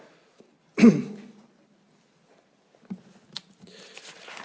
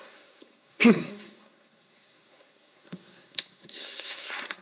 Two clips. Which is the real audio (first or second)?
first